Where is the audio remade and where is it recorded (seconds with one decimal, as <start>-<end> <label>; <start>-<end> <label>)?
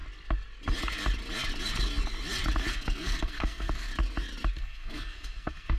0.0-2.7 recorded; 2.7-3.9 remade; 3.9-4.6 recorded; 4.6-5.8 remade